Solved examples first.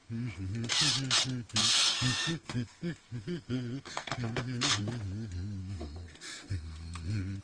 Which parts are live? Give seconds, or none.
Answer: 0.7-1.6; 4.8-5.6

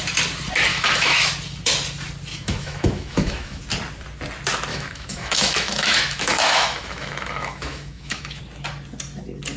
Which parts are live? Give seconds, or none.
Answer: 0.0-0.7; 1.3-2.3; 3.6-4.7; 8.4-9.6

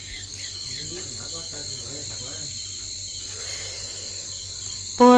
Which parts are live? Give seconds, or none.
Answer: 2.0-3.2

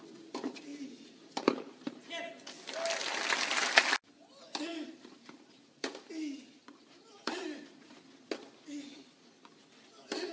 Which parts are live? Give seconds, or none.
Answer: 0.0-0.7; 2.1-4.7; 6.1-6.6; 8.0-10.3

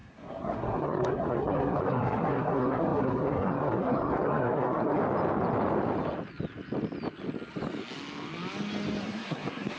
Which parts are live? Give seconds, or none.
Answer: 5.0-9.0